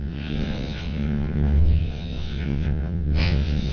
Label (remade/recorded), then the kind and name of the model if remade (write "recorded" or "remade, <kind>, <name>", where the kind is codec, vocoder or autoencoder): remade, vocoder, WaveNeXt